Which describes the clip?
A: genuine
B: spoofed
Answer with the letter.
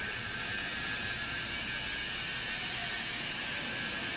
A